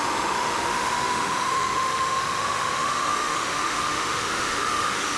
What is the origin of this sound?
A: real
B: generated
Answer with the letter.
B